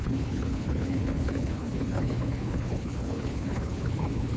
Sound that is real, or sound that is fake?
fake